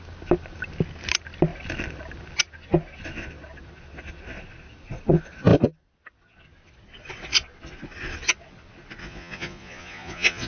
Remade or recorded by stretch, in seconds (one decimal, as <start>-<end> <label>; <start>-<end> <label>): 0.0-9.0 recorded; 9.0-10.5 remade

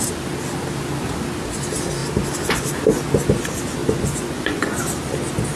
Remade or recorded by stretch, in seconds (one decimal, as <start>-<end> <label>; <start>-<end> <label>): 0.0-3.8 recorded; 3.8-4.8 remade; 4.8-5.6 recorded

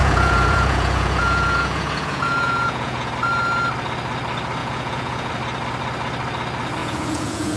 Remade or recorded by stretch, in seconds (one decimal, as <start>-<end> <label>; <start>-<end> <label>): 0.0-3.1 remade; 3.1-4.6 recorded; 4.6-5.3 remade; 5.3-6.8 recorded; 6.8-7.6 remade

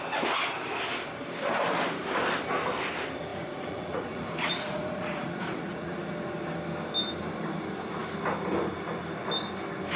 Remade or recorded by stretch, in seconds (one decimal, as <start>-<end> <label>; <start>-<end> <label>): 0.0-3.3 recorded; 3.3-6.1 remade; 6.1-10.0 recorded

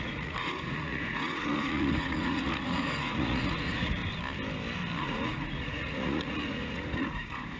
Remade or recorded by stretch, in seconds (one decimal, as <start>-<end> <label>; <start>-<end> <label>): 0.0-4.0 remade; 4.0-5.0 recorded; 5.0-7.6 remade

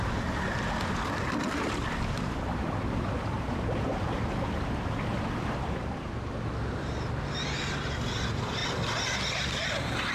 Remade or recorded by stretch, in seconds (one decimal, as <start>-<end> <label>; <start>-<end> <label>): 0.0-10.1 recorded

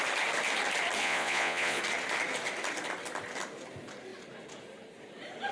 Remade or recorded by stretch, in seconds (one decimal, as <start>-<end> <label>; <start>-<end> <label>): 0.0-1.0 recorded; 1.0-1.8 remade; 1.8-5.5 recorded

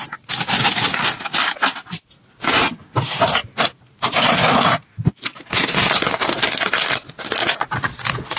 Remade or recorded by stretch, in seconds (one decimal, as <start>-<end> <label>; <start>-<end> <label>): 0.0-7.4 recorded; 7.4-8.4 remade